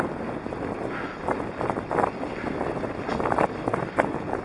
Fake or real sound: real